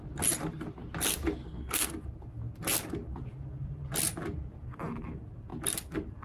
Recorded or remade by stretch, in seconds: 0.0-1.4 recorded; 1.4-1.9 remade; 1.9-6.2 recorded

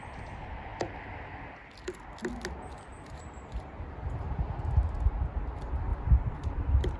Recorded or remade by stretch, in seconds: 0.0-2.9 recorded; 2.9-3.7 remade; 3.7-5.9 recorded; 5.9-7.0 remade

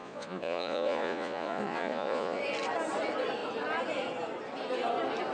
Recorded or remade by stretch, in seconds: 0.0-2.4 remade; 2.4-5.3 recorded

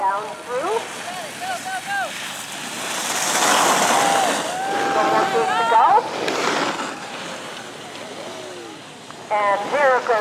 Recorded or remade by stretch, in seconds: 0.0-10.2 recorded

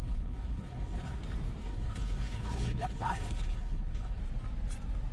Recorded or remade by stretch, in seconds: 0.0-1.2 remade; 1.2-1.6 recorded; 1.6-4.2 remade; 4.2-5.1 recorded